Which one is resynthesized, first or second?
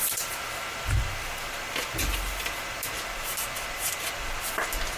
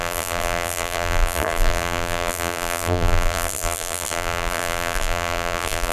second